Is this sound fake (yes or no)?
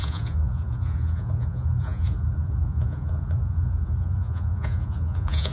yes